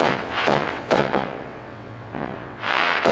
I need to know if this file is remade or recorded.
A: remade